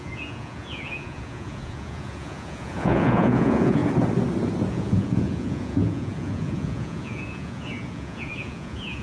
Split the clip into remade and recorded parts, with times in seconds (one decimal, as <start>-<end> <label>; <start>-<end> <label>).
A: 0.0-3.8 remade; 3.8-4.7 recorded; 4.7-9.0 remade